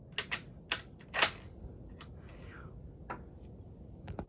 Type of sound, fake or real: real